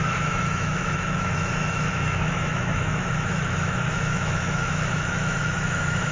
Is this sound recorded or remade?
remade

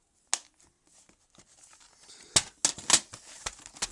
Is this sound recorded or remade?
recorded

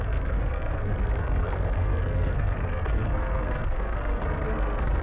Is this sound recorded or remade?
remade